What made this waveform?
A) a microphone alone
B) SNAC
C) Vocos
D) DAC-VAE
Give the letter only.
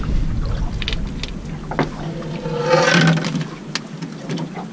A